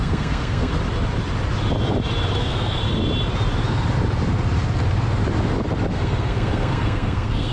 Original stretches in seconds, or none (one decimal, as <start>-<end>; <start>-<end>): 0.7-2.4; 2.8-5.9